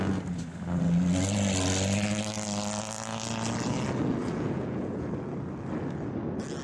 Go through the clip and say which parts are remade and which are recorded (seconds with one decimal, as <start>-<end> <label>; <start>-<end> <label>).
0.0-4.2 recorded; 4.2-5.1 remade; 5.1-6.6 recorded